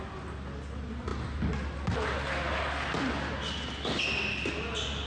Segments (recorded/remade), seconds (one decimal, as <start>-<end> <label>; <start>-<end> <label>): 0.0-5.1 recorded